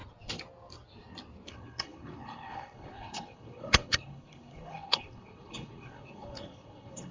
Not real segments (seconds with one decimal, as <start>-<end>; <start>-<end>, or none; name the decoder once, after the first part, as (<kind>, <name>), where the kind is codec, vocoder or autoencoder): 1.5-7.1 (codec, HILCodec)